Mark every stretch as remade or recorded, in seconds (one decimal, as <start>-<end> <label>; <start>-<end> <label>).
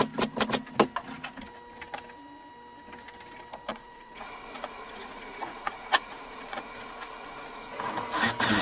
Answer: 0.0-3.7 recorded; 3.7-8.0 remade; 8.0-8.6 recorded